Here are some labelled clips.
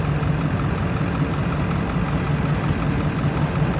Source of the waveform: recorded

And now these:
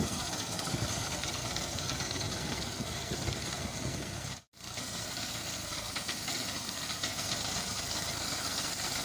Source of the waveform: remade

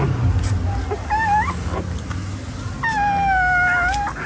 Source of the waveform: recorded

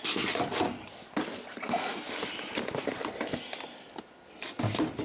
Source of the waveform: recorded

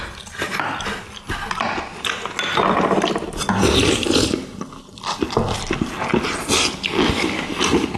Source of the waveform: recorded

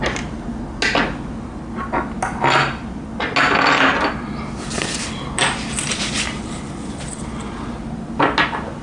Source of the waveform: recorded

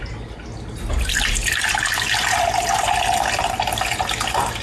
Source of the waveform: recorded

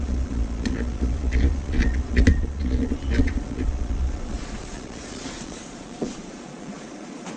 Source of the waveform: remade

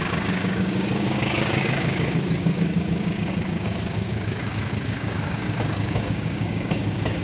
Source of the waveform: remade